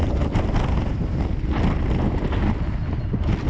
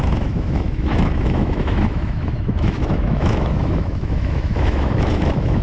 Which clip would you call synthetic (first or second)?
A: second